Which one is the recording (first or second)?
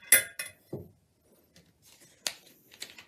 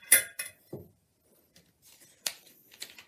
first